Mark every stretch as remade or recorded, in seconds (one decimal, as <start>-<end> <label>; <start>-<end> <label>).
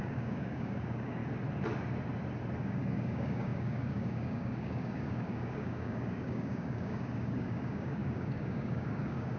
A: 0.0-1.2 remade; 1.2-2.6 recorded; 2.6-9.4 remade